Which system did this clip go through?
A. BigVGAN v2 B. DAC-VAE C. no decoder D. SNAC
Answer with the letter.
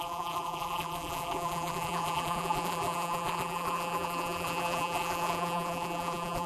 A